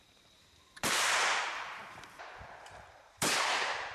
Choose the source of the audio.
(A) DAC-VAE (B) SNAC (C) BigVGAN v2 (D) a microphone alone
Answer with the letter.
C